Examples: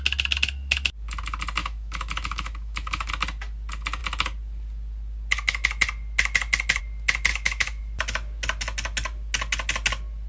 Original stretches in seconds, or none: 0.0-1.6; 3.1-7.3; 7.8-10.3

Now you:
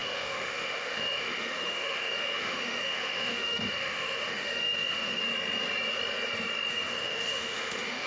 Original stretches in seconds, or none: 5.2-6.7

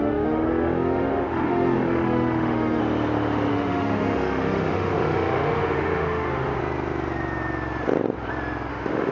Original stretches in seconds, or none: 2.8-3.5; 6.6-8.7

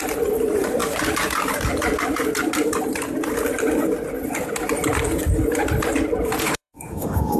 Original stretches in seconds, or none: 0.0-6.4